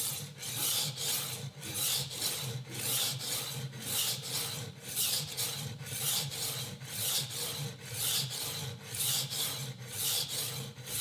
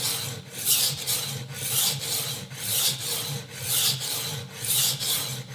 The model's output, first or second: first